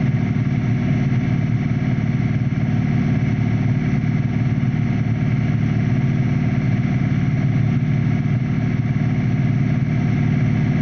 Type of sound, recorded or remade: recorded